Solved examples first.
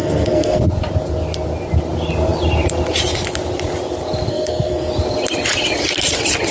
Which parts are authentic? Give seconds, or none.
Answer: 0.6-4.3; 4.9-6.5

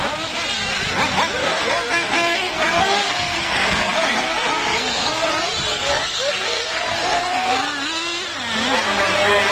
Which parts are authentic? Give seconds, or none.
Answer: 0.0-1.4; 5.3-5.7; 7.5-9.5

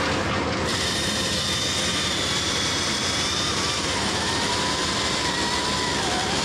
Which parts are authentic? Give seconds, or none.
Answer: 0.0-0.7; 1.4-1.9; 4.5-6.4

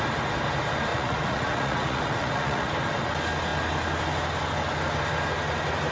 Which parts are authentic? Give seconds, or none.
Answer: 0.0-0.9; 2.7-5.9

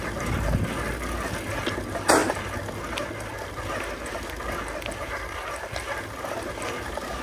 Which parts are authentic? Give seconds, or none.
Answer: 0.6-7.2